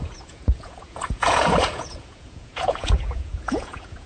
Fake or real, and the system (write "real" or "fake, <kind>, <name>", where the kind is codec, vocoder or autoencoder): fake, vocoder, Vocos